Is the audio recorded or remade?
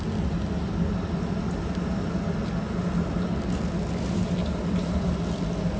recorded